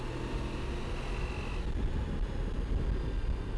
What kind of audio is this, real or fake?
real